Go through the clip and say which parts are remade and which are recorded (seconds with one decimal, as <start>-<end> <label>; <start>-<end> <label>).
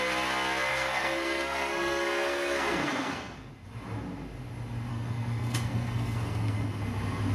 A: 0.0-0.7 recorded; 0.7-3.5 remade; 3.5-4.9 recorded; 4.9-6.8 remade; 6.8-7.3 recorded